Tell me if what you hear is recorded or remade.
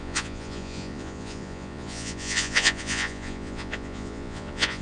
remade